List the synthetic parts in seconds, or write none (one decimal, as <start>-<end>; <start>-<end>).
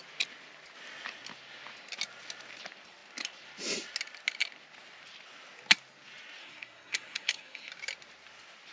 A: 6.4-7.7